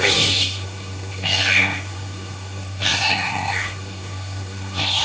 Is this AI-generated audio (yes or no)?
yes